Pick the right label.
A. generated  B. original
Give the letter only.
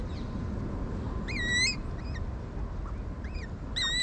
B